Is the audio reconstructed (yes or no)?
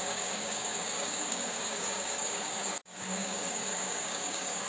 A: yes